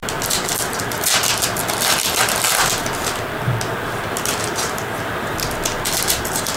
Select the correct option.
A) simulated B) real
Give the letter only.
B